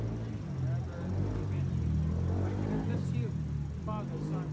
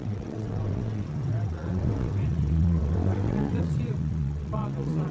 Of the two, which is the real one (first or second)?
first